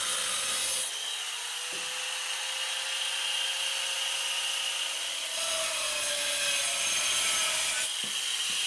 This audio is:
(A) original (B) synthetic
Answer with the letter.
A